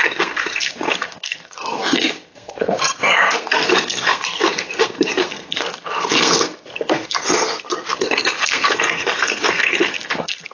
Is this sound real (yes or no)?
no